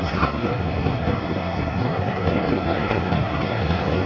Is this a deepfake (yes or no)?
yes